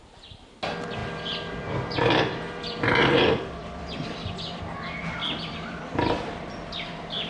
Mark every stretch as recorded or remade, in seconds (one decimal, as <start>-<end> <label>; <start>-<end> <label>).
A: 0.0-1.0 recorded; 1.0-4.6 remade; 4.6-5.0 recorded; 5.0-7.3 remade